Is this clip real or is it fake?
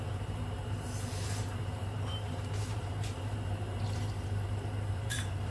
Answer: fake